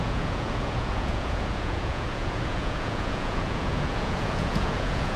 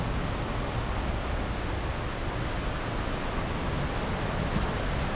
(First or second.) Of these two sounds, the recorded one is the second